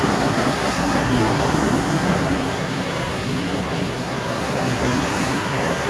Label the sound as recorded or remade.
remade